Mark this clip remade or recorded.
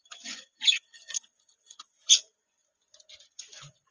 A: remade